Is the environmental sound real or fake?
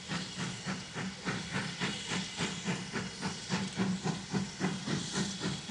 real